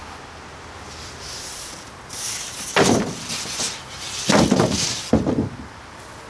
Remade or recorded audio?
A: recorded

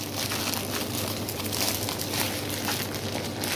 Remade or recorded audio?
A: recorded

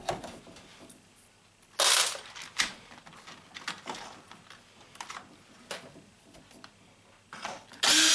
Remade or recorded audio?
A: recorded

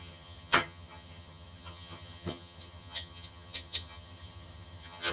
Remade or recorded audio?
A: remade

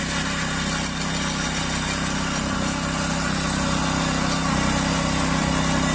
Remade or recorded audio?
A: recorded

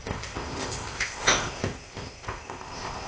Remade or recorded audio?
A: remade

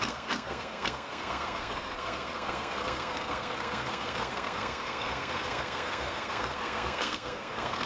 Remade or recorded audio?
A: remade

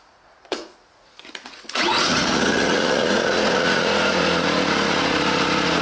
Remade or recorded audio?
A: remade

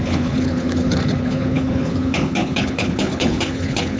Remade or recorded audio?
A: remade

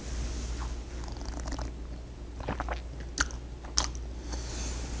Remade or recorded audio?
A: recorded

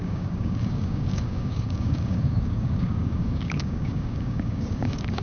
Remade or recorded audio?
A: remade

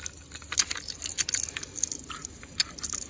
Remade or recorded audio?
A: recorded